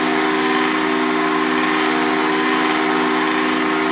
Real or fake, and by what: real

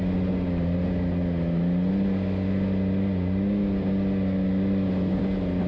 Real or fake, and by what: real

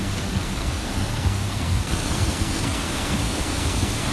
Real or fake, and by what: fake, codec, SNAC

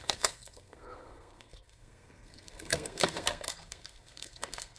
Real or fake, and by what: fake, codec, SNAC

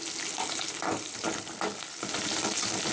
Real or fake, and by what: real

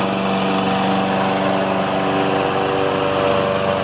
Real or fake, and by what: real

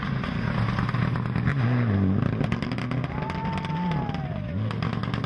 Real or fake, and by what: real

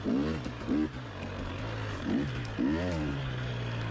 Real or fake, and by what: real